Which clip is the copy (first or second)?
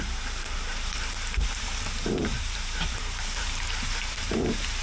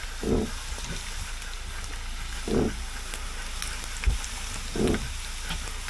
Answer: first